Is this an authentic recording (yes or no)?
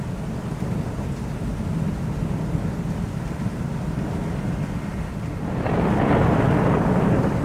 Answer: yes